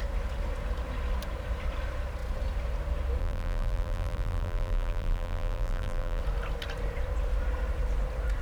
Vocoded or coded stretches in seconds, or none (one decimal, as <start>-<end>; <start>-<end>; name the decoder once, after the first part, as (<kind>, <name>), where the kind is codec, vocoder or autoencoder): 3.2-6.2 (vocoder, BigVGAN v2)